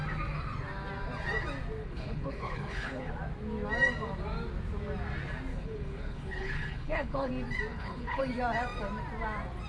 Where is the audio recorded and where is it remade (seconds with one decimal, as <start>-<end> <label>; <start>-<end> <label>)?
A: 0.0-1.8 recorded; 1.8-3.1 remade; 3.1-5.5 recorded; 5.5-7.3 remade; 7.3-7.7 recorded; 7.7-8.2 remade; 8.2-9.7 recorded